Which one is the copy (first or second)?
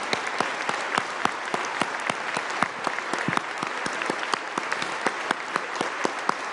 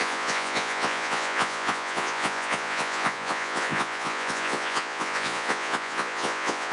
second